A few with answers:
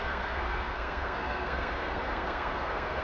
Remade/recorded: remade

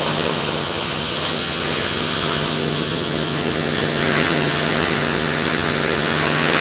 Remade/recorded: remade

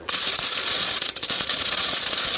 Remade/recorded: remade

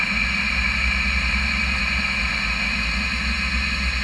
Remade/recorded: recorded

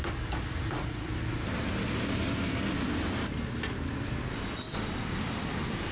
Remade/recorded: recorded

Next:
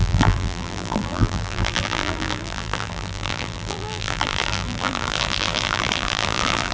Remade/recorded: remade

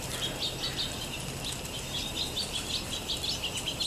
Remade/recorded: recorded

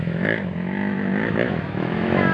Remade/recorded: remade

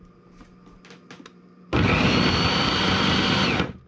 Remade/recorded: recorded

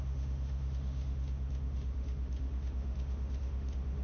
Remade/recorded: remade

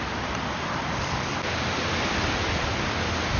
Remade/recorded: recorded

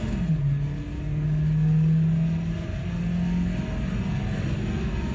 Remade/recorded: recorded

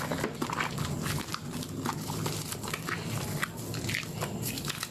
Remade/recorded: recorded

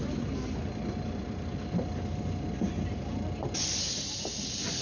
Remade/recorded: recorded